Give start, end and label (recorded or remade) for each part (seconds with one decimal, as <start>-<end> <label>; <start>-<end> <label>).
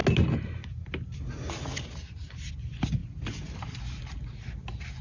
0.0-5.0 recorded